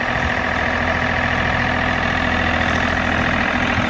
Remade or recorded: recorded